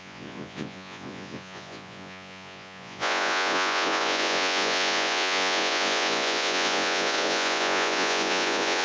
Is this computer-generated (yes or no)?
yes